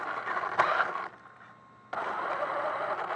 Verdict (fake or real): real